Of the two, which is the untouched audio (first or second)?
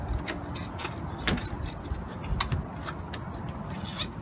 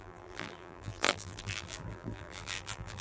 first